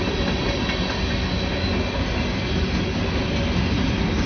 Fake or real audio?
real